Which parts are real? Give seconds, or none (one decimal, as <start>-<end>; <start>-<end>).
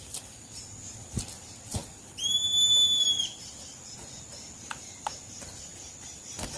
0.0-6.6